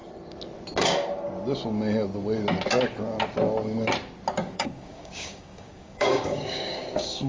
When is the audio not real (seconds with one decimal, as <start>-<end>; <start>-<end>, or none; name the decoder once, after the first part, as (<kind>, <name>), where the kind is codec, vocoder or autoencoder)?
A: 4.4-7.3 (codec, DAC)